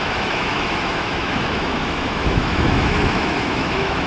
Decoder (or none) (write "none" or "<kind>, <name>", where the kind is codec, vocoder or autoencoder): autoencoder, DAC-VAE